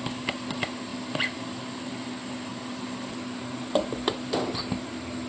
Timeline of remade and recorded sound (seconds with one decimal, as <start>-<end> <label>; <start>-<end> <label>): 0.0-5.3 recorded